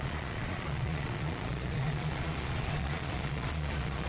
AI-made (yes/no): yes